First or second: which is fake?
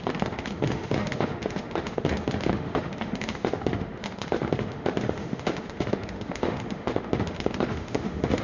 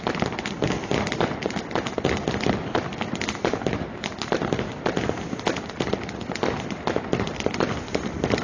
first